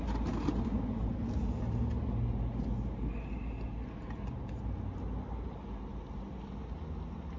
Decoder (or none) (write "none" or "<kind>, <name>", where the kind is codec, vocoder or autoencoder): none